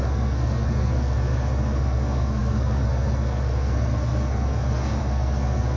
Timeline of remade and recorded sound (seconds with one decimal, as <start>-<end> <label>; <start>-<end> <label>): 0.0-5.8 remade